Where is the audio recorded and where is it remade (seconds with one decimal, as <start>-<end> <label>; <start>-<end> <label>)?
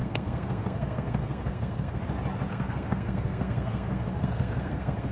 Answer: 0.0-2.0 remade; 2.0-2.5 recorded; 2.5-5.1 remade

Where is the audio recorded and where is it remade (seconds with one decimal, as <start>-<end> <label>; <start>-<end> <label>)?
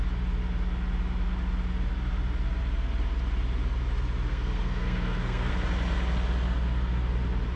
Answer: 0.0-4.3 recorded; 4.3-5.5 remade; 5.5-7.6 recorded